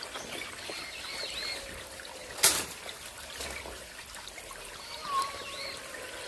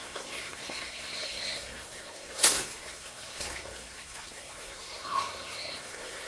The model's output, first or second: second